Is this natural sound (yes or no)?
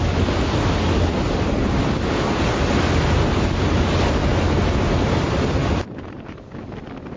yes